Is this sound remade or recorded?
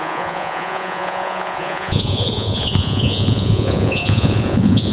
remade